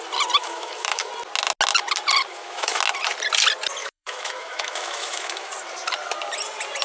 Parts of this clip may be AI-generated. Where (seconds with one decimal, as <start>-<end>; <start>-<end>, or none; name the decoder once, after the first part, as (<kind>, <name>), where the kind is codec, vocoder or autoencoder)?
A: 0.4-1.1 (autoencoder, DAC-VAE); 2.3-2.8; 3.8-5.5